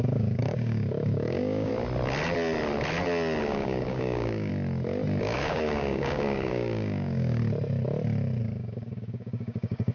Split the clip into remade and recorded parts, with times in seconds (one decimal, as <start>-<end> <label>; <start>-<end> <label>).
0.0-1.7 remade; 1.7-3.4 recorded; 3.4-4.5 remade; 4.5-5.2 recorded; 5.2-7.4 remade; 7.4-8.4 recorded; 8.4-9.9 remade